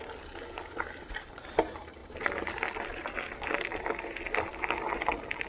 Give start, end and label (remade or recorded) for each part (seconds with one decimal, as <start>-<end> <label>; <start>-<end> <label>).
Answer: 0.0-5.5 recorded